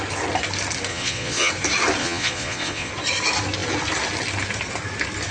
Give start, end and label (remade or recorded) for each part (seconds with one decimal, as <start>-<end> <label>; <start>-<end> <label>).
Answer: 0.0-0.9 recorded; 0.9-1.5 remade; 1.5-2.0 recorded; 2.0-2.9 remade; 2.9-5.3 recorded